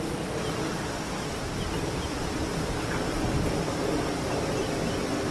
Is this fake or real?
real